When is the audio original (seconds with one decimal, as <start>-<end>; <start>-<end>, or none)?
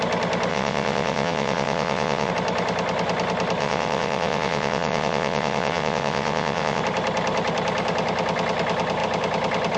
0.0-0.5; 2.3-3.6; 6.8-9.8